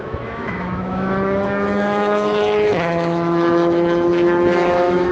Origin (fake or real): fake